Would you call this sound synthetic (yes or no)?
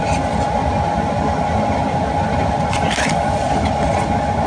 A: no